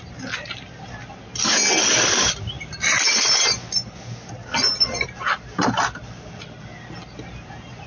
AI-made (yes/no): no